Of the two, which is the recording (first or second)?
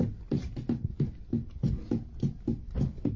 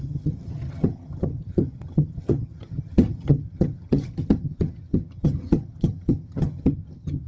first